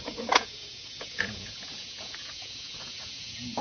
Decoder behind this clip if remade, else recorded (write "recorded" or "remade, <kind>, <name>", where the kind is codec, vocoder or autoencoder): remade, vocoder, Vocos